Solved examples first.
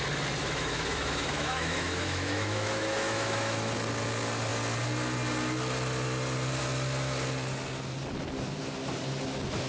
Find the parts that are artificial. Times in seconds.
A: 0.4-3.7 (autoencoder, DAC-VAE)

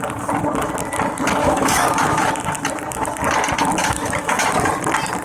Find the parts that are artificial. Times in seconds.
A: 1.4-2.3 (autoencoder, DAC-VAE); 3.8-4.7